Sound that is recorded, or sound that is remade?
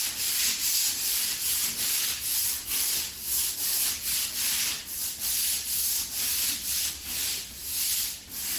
remade